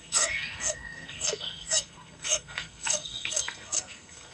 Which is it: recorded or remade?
remade